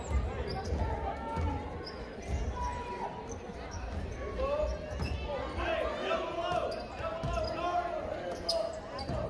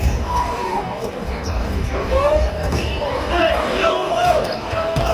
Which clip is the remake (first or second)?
second